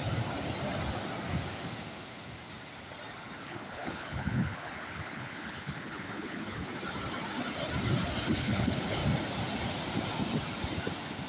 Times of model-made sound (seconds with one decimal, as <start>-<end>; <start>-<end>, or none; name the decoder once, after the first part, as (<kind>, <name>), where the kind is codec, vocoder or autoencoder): 3.4-6.7 (codec, HILCodec); 8.3-9.0